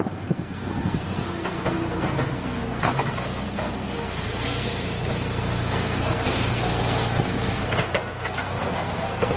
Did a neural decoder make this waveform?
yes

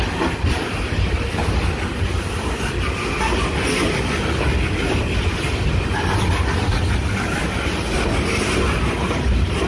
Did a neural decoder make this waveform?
no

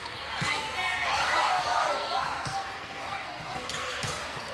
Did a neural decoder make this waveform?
yes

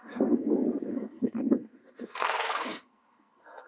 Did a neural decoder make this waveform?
yes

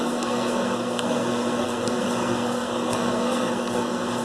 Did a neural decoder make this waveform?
yes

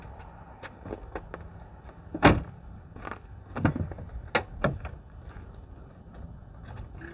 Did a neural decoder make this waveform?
no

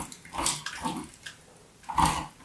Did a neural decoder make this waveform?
no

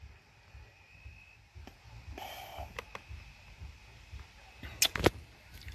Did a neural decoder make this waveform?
no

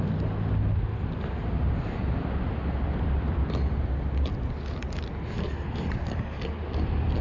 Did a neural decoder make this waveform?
no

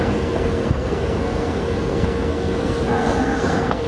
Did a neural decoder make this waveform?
yes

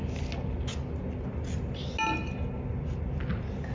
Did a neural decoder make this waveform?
no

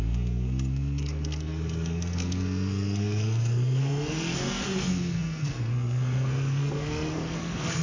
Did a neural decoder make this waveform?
yes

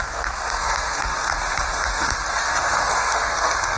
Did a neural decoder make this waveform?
yes